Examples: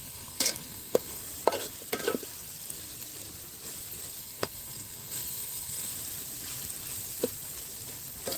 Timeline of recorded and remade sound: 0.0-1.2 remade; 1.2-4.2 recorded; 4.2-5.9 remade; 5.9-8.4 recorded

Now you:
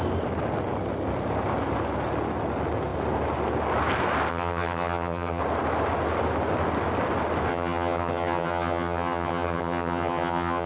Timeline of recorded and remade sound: 0.0-4.3 recorded; 4.3-5.4 remade; 5.4-7.5 recorded; 7.5-10.7 remade

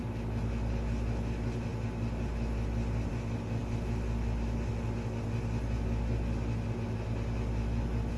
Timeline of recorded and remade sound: 0.0-8.2 recorded

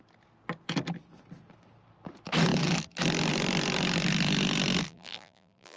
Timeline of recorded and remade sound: 0.0-4.9 recorded; 4.9-5.8 remade

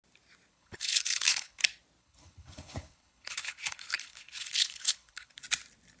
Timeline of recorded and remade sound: 0.0-0.5 recorded; 0.5-1.6 remade; 1.6-2.0 recorded; 2.0-5.4 remade; 5.4-6.0 recorded

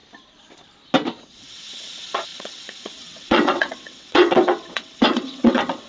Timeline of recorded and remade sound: 0.0-1.2 recorded; 1.2-5.9 remade